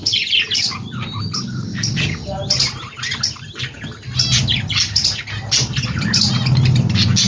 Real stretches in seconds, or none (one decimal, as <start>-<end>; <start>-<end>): 0.0-7.3